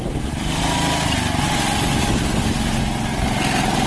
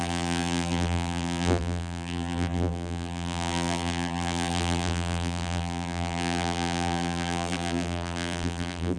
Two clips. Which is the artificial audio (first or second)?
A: second